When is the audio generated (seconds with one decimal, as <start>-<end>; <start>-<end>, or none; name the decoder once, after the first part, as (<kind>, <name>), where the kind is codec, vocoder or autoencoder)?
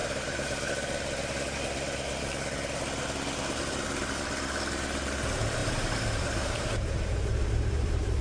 0.0-0.7 (vocoder, BigVGAN v2); 5.6-8.2